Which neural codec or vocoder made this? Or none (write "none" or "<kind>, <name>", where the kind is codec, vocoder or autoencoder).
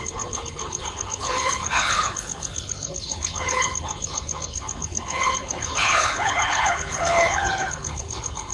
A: codec, HILCodec